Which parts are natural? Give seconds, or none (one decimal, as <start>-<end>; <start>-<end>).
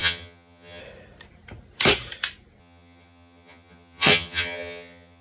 0.8-2.6